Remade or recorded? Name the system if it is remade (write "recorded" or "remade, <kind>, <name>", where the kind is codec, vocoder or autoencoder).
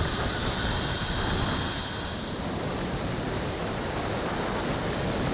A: recorded